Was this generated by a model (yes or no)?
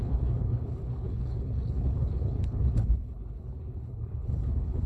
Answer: yes